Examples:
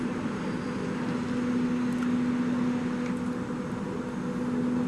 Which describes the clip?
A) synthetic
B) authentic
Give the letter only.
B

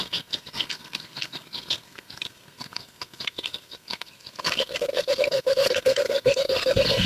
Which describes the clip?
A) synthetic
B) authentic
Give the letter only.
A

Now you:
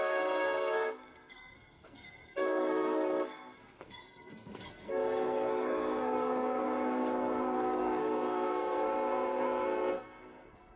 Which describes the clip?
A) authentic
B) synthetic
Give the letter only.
B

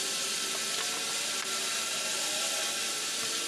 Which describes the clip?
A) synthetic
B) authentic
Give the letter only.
B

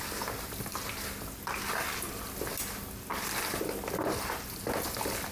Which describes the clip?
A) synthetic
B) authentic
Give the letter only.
B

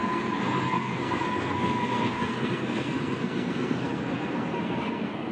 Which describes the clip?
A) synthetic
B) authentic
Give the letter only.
A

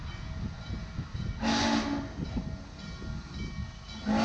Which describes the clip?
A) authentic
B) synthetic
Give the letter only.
A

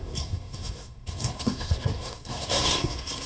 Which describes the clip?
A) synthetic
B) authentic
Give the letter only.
A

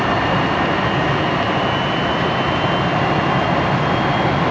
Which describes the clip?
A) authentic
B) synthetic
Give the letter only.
A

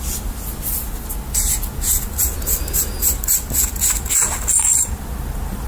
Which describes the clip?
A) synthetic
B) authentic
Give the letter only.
B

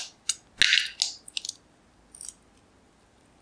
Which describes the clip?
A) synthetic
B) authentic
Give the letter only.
B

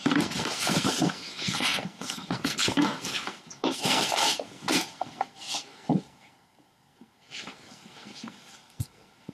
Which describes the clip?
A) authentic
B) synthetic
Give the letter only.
B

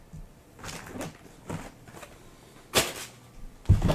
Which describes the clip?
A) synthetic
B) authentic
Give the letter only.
B